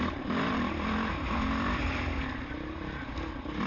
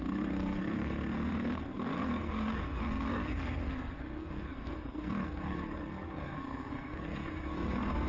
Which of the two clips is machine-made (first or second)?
second